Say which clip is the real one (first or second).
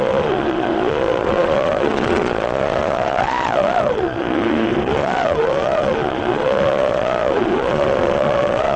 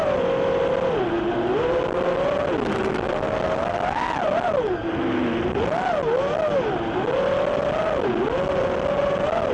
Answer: second